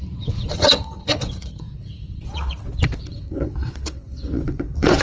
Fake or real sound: fake